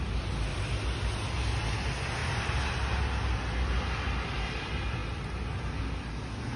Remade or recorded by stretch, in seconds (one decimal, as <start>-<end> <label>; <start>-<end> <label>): 0.0-2.2 recorded; 2.2-2.7 remade; 2.7-6.6 recorded

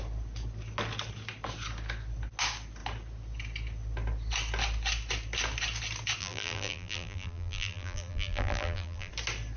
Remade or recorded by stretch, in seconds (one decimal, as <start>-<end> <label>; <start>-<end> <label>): 0.0-6.2 recorded; 6.2-9.1 remade; 9.1-9.6 recorded